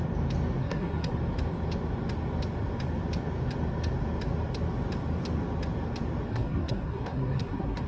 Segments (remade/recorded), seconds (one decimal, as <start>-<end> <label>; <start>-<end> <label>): 0.0-0.6 recorded; 0.6-1.1 remade; 1.1-6.3 recorded; 6.3-7.9 remade